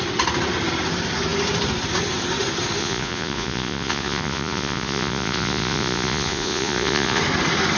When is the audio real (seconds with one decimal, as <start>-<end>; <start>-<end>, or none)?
0.0-2.8; 7.2-7.8